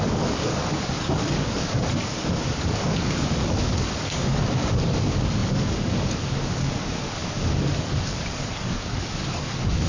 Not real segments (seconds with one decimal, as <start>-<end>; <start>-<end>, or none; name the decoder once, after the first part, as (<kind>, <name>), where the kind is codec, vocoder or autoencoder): 0.0-9.9 (codec, DAC)